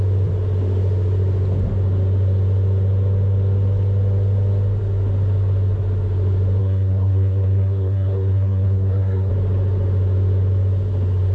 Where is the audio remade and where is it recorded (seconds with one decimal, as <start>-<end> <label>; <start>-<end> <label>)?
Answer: 0.0-6.6 recorded; 6.6-9.3 remade; 9.3-11.3 recorded